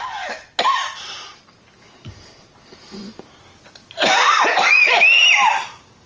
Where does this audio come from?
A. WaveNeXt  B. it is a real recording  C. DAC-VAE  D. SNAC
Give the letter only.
B